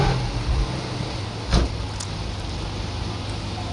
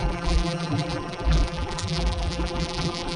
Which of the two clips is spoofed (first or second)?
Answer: second